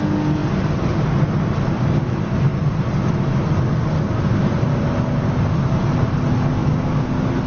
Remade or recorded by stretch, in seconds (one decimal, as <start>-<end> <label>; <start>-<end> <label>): 0.0-6.6 recorded; 6.6-7.1 remade; 7.1-7.5 recorded